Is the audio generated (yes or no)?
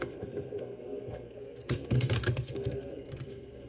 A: yes